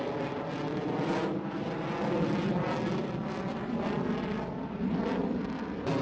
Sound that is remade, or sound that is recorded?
recorded